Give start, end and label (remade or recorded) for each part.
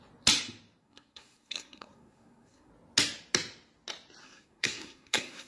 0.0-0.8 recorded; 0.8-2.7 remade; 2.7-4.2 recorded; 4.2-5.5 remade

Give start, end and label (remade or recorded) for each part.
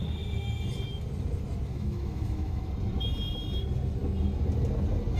0.0-1.7 recorded; 1.7-2.7 remade; 2.7-5.2 recorded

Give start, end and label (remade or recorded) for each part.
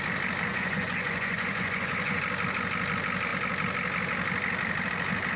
0.0-0.5 recorded; 0.5-2.2 remade; 2.2-5.4 recorded